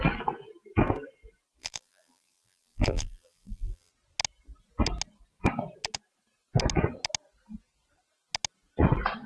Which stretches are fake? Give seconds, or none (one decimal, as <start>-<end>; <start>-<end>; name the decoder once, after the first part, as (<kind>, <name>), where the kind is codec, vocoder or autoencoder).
1.6-3.9 (vocoder, BigVGAN v2)